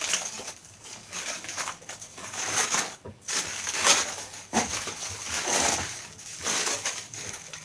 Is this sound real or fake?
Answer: fake